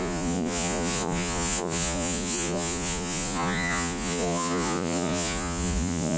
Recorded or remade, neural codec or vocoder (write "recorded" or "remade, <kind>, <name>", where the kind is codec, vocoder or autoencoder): remade, vocoder, Vocos